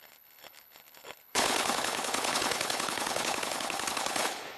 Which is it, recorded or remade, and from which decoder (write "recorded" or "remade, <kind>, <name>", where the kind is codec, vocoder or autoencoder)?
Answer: remade, codec, HILCodec